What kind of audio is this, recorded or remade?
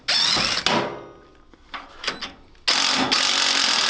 recorded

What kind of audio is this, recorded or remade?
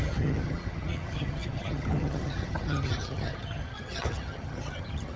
remade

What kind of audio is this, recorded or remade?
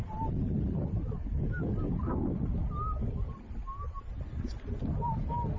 recorded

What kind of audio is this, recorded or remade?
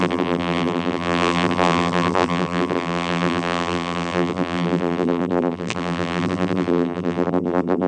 remade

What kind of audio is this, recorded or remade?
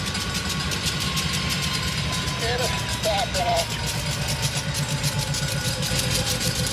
recorded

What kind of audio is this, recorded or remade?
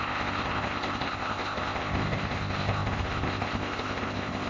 remade